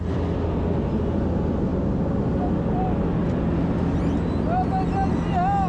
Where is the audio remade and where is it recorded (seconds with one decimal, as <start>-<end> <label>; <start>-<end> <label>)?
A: 0.0-5.7 recorded